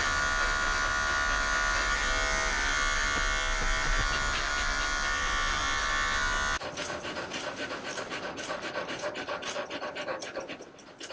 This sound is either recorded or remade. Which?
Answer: recorded